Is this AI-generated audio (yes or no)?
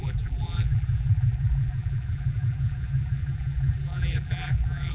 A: yes